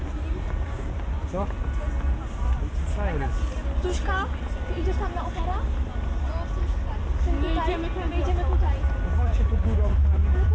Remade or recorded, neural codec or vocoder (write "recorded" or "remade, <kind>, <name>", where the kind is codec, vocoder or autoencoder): recorded